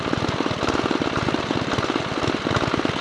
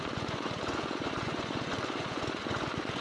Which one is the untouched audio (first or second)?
first